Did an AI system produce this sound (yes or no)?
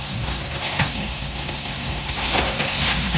yes